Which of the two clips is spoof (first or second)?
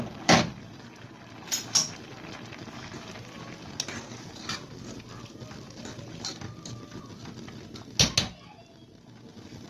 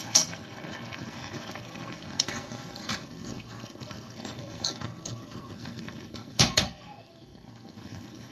second